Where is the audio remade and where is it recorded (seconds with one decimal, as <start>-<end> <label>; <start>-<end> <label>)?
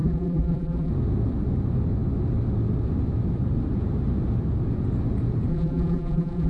0.0-0.9 remade; 0.9-5.5 recorded; 5.5-6.5 remade